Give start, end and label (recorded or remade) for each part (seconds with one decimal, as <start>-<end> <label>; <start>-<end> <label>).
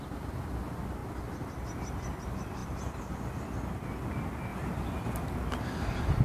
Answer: 0.0-6.2 recorded